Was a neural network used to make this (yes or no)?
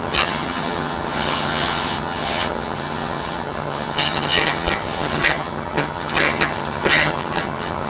yes